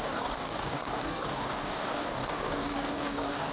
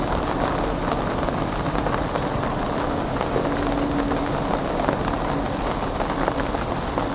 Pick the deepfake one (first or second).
first